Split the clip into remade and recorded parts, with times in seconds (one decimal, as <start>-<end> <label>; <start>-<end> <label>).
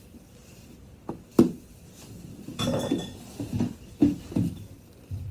0.0-4.0 recorded; 4.0-4.7 remade; 4.7-5.3 recorded